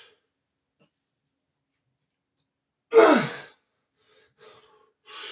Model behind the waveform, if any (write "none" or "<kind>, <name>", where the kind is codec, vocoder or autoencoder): none